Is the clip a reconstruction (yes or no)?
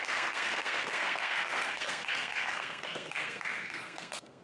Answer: yes